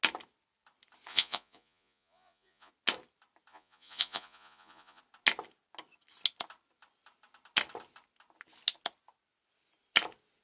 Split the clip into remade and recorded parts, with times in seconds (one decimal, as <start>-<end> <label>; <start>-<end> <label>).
0.0-1.1 recorded; 1.1-2.7 remade; 2.7-3.5 recorded; 3.5-5.0 remade; 5.0-10.4 recorded